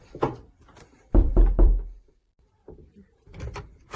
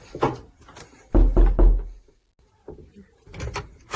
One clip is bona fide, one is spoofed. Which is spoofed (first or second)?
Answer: first